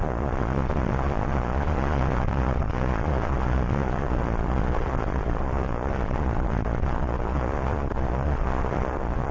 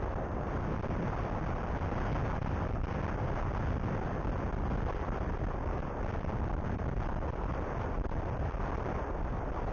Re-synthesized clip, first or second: first